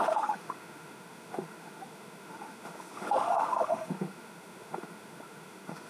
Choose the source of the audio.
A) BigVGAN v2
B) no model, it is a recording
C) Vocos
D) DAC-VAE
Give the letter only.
D